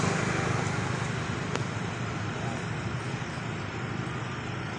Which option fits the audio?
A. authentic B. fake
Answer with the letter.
A